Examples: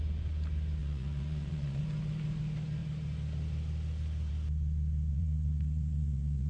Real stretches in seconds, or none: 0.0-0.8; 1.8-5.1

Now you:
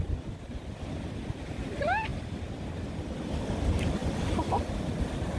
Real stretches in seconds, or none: 0.0-2.1; 3.5-4.0; 4.8-5.4

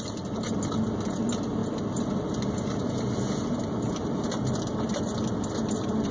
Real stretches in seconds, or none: 0.0-6.1

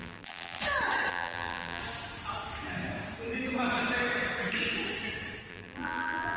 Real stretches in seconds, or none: 0.6-1.1; 1.8-5.5